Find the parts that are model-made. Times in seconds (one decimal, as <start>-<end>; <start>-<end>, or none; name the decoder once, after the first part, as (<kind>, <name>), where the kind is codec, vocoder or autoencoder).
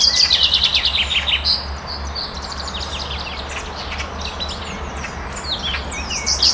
none